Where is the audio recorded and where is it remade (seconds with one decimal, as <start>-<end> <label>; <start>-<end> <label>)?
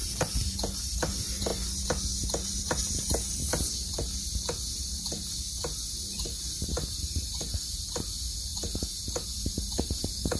0.0-10.4 recorded